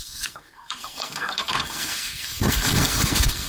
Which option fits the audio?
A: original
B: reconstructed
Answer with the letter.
B